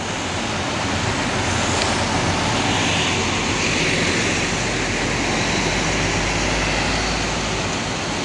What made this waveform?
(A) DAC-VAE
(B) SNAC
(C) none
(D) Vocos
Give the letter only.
C